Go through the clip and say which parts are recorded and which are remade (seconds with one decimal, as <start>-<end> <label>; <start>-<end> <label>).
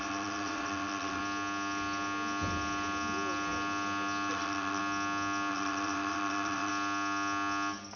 0.0-1.2 remade; 1.2-4.3 recorded; 4.3-4.8 remade; 4.8-5.5 recorded; 5.5-6.7 remade; 6.7-8.0 recorded